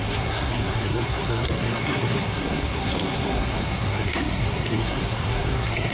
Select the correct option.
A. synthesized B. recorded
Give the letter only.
A